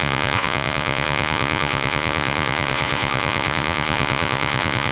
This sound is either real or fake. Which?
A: fake